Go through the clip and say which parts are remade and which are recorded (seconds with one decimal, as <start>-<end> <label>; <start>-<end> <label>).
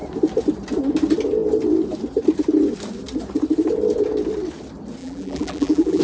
0.0-5.0 recorded; 5.0-6.0 remade